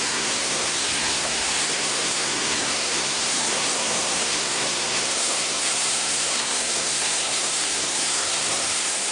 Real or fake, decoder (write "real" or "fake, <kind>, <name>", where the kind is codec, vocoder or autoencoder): fake, codec, SNAC